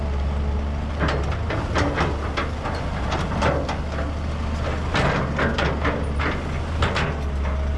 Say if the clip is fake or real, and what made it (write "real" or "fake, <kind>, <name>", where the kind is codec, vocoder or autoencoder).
real